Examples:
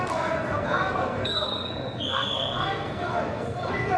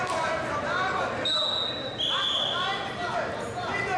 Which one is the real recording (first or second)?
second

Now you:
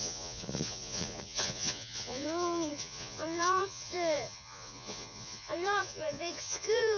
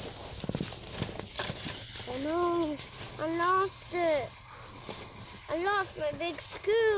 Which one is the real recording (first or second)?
second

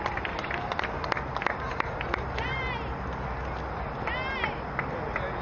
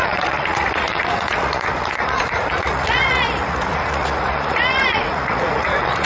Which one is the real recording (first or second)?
first